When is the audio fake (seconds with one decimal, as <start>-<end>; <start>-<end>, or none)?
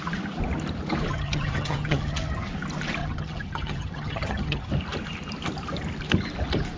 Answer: 1.1-2.5; 3.0-4.7